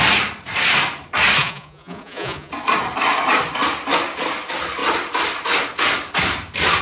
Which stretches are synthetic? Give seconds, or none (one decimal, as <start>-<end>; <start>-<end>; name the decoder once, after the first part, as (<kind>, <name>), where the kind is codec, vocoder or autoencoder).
1.4-2.5 (vocoder, Vocos)